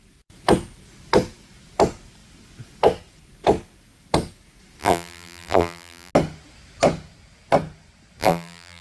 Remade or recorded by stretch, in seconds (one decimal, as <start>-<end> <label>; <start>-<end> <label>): 0.0-4.8 recorded; 4.8-6.1 remade; 6.1-8.2 recorded; 8.2-8.8 remade